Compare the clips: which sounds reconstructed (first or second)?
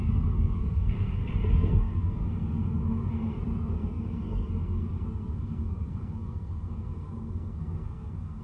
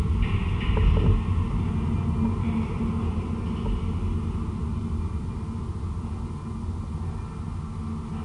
first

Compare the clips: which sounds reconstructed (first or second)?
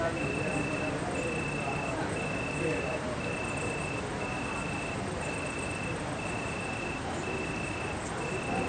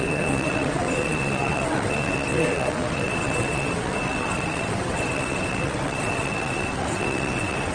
second